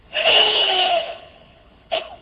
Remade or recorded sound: remade